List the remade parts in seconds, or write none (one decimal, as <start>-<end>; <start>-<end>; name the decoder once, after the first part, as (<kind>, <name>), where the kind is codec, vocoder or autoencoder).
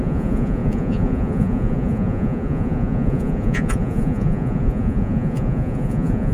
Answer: 0.0-6.3 (vocoder, Vocos)